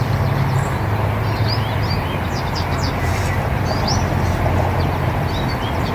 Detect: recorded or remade recorded